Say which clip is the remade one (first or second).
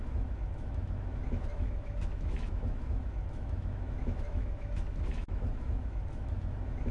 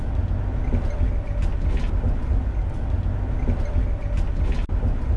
first